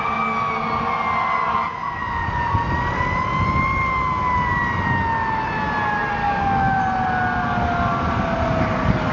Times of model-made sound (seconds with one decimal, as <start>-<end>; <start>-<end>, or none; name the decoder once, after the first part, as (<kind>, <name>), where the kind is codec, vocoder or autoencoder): 6.2-6.8 (codec, DAC)

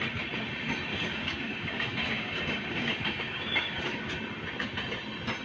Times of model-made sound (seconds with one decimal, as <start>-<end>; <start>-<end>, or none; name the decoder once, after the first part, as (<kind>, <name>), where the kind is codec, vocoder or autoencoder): 0.9-4.1 (codec, DAC)

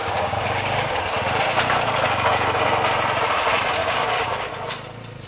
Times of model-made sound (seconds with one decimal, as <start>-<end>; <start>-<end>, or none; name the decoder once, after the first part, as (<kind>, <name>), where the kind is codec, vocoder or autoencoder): 0.0-1.0 (codec, DAC); 3.8-4.5

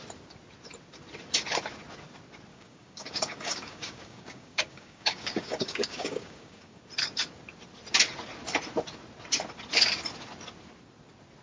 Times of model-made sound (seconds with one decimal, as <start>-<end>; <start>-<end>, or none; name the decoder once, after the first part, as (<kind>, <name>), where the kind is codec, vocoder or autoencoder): 2.5-6.8 (codec, DAC)

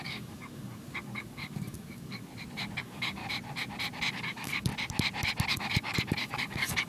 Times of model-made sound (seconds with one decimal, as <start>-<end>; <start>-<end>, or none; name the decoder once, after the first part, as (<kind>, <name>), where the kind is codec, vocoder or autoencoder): 0.0-2.3 (codec, DAC); 2.8-3.2; 4.1-4.7; 5.5-6.9

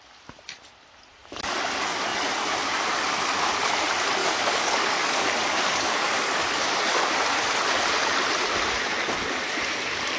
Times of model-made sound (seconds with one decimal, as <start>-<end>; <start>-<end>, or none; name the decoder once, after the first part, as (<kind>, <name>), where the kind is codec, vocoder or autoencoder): 4.2-7.2 (codec, DAC)

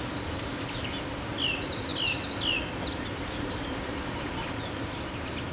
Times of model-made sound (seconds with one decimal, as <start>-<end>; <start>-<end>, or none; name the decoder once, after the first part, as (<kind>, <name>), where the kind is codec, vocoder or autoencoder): none